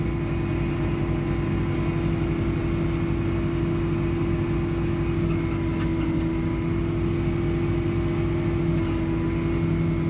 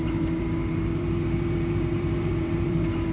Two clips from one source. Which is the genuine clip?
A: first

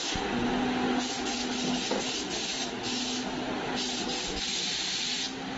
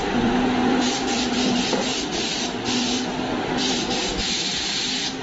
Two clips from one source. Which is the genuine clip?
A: first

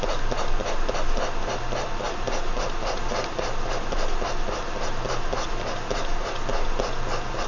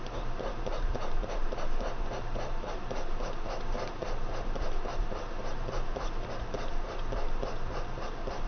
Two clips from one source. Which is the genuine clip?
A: first